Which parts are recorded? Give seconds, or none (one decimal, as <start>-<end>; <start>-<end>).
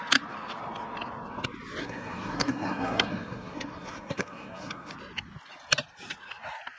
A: 0.0-1.8; 4.9-6.8